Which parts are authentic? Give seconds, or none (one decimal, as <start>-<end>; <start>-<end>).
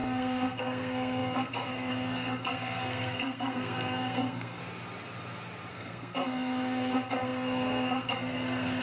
4.6-5.7